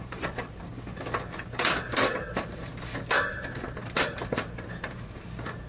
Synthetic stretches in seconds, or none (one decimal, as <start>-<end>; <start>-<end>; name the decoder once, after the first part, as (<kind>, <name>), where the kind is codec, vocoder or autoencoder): 0.0-0.7 (vocoder, BigVGAN v2); 1.8-2.7; 3.3-5.7